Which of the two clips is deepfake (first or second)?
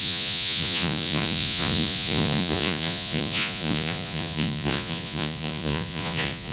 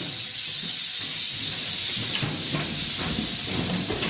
first